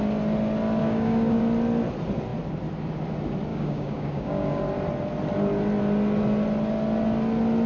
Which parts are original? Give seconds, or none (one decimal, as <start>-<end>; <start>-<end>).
0.0-0.8; 1.4-3.5; 4.6-7.7